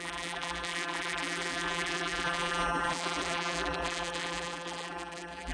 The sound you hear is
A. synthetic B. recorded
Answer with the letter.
A